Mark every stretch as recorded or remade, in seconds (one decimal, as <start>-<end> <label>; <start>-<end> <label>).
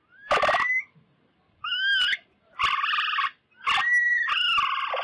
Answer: 0.0-5.0 recorded